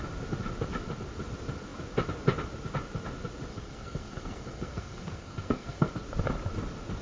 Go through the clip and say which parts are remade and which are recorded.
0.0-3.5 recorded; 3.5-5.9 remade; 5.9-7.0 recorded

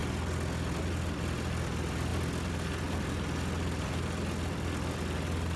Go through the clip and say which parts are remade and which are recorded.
0.0-5.6 recorded

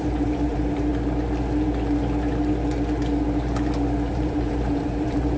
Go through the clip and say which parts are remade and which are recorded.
0.0-0.9 remade; 0.9-4.1 recorded; 4.1-5.4 remade